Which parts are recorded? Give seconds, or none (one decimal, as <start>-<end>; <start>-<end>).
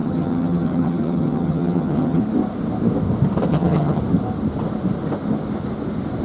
2.2-3.5; 4.0-6.2